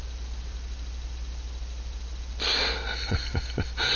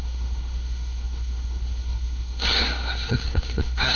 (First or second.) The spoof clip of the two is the second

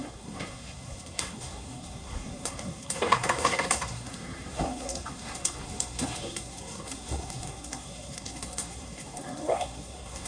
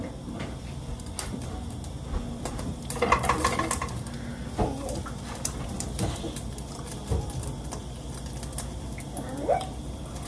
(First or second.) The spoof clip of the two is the first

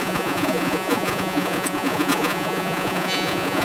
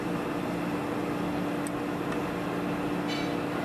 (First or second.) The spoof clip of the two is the first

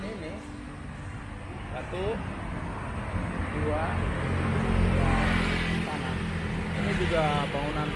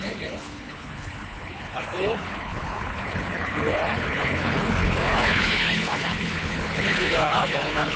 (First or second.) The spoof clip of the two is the second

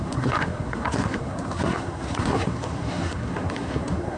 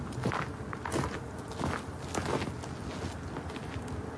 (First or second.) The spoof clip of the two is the first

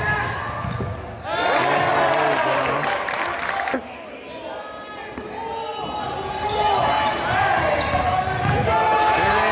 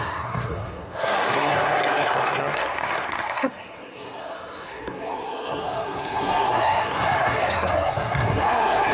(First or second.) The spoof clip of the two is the second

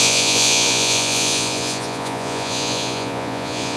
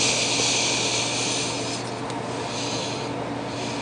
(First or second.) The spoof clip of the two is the first